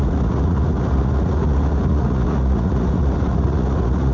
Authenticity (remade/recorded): remade